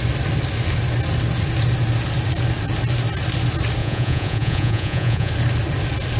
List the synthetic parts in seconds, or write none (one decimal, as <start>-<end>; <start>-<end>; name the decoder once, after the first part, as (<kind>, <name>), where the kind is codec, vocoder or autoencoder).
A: 3.8-5.3 (vocoder, Vocos)

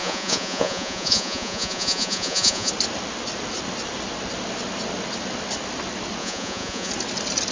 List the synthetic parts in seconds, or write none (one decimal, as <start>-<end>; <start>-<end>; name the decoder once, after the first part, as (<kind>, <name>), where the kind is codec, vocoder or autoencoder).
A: 0.0-2.7 (vocoder, Vocos); 6.2-6.9

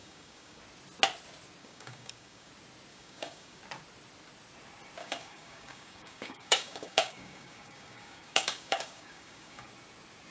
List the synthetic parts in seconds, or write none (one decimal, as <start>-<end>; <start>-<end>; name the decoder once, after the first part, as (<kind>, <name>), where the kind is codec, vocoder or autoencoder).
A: 0.0-0.6 (codec, DAC); 1.6-2.5; 2.9-3.6; 5.0-9.7

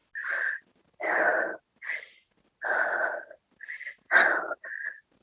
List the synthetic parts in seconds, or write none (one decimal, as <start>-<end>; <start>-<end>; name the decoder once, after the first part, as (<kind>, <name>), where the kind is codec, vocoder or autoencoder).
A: none

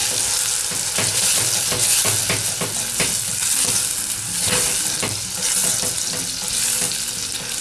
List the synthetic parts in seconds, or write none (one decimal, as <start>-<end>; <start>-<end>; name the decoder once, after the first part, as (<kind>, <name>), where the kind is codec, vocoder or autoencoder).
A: none